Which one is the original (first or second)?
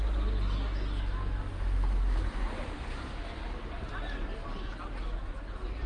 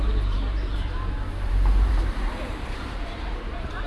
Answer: first